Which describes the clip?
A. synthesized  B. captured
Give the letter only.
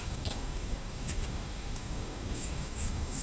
A